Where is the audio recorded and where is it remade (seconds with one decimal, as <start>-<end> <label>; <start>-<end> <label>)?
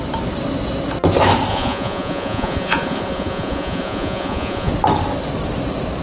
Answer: 0.0-1.5 recorded; 1.5-4.7 remade; 4.7-6.0 recorded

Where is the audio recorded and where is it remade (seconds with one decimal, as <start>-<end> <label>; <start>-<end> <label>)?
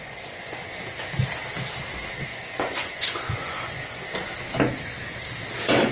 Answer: 0.0-0.8 remade; 0.8-2.3 recorded; 2.3-4.0 remade; 4.0-5.9 recorded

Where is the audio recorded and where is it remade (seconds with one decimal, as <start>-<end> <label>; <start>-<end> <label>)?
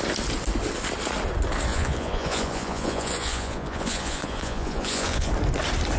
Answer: 0.0-1.7 recorded; 1.7-5.3 remade; 5.3-6.0 recorded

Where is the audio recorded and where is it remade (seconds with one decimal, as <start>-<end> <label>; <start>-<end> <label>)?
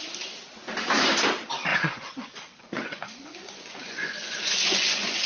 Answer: 0.0-1.7 recorded; 1.7-5.3 remade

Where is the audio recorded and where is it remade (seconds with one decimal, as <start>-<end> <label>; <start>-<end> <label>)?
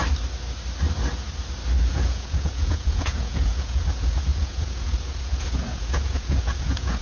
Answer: 0.0-1.9 recorded; 1.9-7.0 remade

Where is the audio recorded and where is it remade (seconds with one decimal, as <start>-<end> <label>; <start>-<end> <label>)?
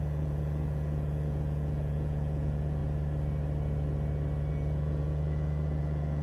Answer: 0.0-2.8 remade; 2.8-4.5 recorded; 4.5-6.2 remade